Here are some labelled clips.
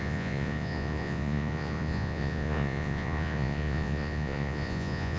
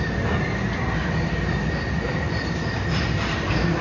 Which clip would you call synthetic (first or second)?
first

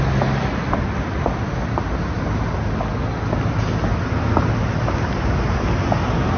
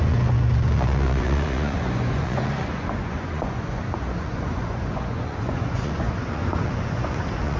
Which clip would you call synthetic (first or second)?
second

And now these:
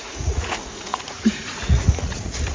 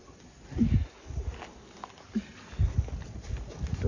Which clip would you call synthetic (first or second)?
first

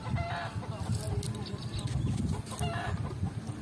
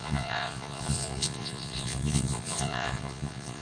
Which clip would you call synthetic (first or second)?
second